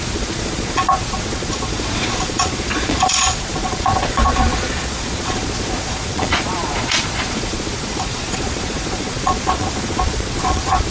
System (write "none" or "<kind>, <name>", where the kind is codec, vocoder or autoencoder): vocoder, Vocos